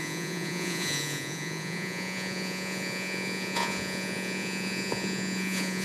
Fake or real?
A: fake